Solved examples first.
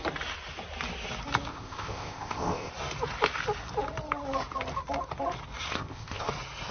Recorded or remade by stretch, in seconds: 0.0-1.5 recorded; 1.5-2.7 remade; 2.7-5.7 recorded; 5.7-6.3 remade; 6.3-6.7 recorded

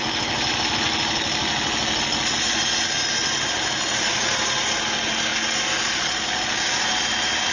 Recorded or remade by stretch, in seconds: 0.0-7.5 recorded